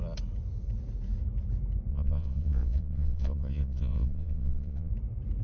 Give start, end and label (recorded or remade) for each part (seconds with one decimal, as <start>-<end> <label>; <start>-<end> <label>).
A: 0.0-1.9 recorded; 1.9-4.9 remade; 4.9-5.4 recorded